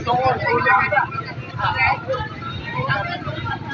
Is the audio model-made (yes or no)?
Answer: yes